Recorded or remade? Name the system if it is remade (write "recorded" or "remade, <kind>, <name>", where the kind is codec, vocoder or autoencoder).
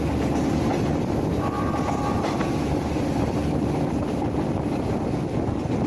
recorded